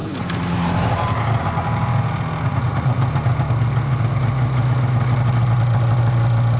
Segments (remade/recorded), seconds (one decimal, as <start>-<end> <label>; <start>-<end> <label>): 0.0-2.5 recorded; 2.5-3.0 remade; 3.0-6.6 recorded